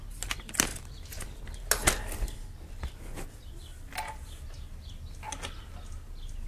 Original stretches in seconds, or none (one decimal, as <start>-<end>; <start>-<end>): 0.0-6.5